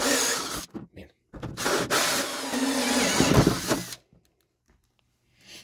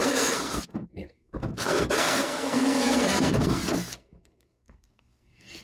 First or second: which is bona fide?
first